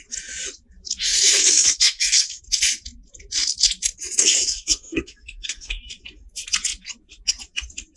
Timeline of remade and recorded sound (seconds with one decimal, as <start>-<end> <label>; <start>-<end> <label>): 0.0-1.1 recorded; 1.1-2.4 remade; 2.4-4.2 recorded; 4.2-5.8 remade; 5.8-8.0 recorded